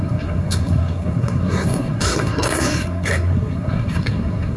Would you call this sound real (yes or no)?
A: no